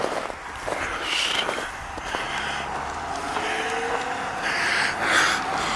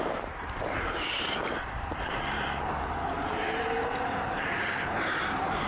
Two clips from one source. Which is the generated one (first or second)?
second